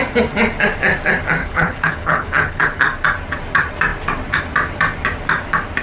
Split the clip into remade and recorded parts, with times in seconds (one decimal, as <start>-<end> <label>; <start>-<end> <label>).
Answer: 0.0-1.4 recorded; 1.4-2.8 remade; 2.8-5.8 recorded